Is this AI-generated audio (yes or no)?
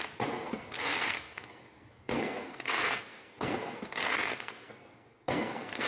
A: yes